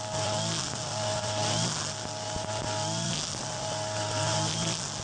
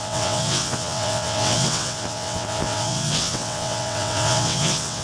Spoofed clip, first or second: second